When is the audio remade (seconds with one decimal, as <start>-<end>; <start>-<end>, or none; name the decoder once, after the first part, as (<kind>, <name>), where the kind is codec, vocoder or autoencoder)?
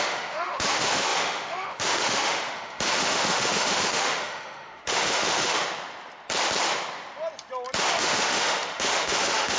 0.0-5.6 (autoencoder, DAC-VAE); 7.8-9.6